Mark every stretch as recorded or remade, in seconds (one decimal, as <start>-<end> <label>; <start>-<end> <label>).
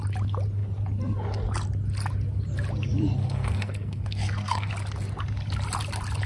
0.0-3.2 recorded; 3.2-4.7 remade; 4.7-6.3 recorded